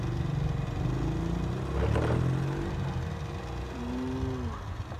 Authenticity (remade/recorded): recorded